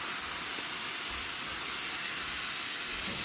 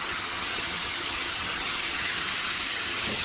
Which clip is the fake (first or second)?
second